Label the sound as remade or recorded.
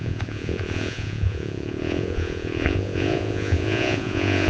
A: remade